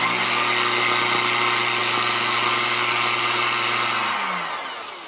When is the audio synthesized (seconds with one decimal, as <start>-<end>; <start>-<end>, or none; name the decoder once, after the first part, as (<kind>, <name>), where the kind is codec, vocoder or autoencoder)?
none

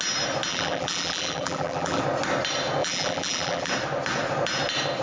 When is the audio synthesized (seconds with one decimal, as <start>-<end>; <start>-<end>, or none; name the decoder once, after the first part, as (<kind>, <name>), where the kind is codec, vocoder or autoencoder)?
0.5-2.0 (vocoder, BigVGAN v2); 2.8-3.7

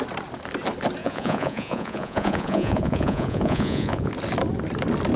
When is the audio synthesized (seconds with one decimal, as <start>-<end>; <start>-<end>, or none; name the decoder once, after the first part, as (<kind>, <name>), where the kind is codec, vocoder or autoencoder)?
1.0-4.1 (vocoder, Vocos)

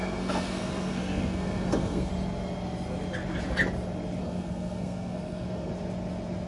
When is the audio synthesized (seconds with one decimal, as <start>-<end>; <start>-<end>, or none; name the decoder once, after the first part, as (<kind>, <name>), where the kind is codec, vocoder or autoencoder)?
0.0-2.1 (codec, SNAC); 4.2-5.7

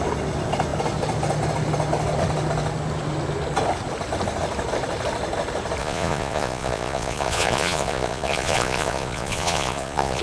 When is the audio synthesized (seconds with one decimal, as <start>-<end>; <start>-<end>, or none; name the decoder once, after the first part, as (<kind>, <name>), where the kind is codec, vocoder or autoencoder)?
5.8-10.2 (vocoder, Vocos)

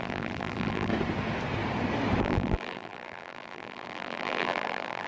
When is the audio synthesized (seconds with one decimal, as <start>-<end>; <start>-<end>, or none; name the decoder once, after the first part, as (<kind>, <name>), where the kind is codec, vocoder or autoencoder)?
0.0-0.9 (vocoder, BigVGAN v2); 2.2-5.1

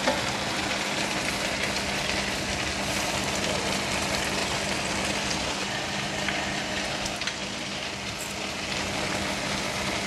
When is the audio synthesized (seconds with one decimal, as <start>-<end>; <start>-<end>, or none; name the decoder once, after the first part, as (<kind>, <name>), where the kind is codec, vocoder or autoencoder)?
none

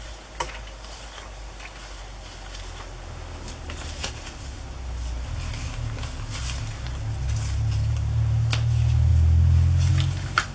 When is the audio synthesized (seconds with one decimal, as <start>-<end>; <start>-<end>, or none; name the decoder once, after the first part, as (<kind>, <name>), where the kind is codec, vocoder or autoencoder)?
none